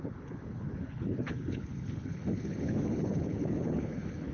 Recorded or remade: remade